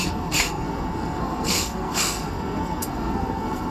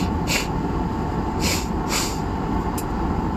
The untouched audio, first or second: second